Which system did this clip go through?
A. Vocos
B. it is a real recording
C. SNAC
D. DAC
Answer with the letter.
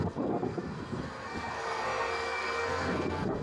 C